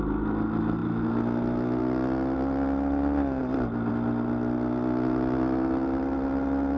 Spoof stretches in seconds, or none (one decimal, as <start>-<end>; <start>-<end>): none